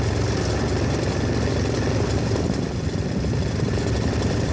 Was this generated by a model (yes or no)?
no